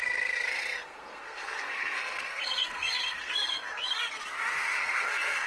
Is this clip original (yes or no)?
no